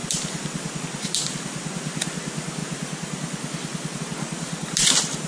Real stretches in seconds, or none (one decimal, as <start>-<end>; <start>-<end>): 0.0-5.3